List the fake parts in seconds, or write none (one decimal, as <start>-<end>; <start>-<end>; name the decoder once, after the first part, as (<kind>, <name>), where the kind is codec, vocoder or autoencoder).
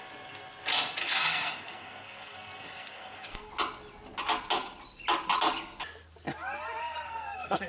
1.0-3.5 (codec, SNAC); 6.8-7.7